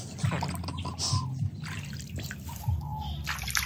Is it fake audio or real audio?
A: real